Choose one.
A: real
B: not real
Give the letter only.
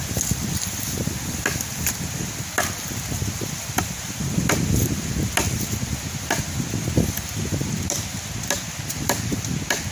A